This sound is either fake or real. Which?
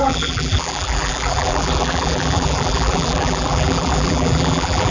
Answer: fake